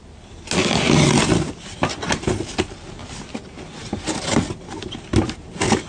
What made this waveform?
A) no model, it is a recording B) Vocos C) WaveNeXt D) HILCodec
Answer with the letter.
A